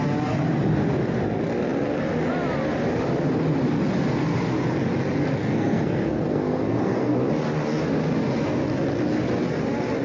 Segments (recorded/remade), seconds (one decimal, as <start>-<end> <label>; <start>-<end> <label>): 0.0-5.4 recorded; 5.4-7.1 remade; 7.1-10.0 recorded